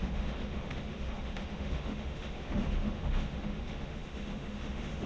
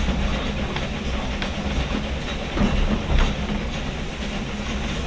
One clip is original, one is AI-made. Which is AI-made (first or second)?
first